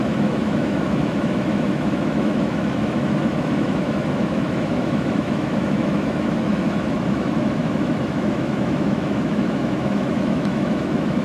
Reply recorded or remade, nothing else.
remade